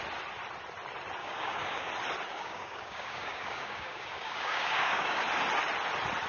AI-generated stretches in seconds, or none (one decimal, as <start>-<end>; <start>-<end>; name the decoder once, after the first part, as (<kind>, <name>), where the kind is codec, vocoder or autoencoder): 1.2-1.9 (codec, DAC); 2.3-5.2